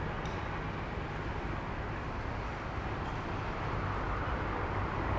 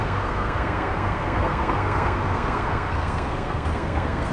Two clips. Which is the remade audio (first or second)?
second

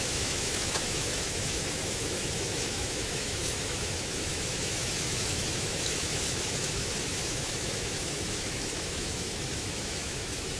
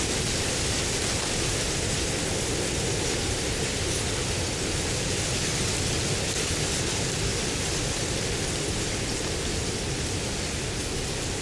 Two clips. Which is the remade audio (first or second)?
first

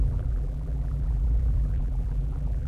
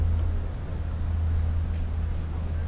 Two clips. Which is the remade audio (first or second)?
first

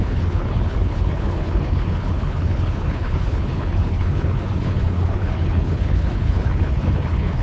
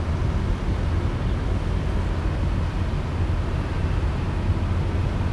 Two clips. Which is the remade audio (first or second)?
first